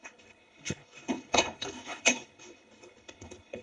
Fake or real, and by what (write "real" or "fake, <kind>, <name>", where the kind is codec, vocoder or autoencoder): fake, codec, HILCodec